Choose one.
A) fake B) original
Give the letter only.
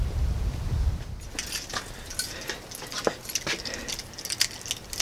B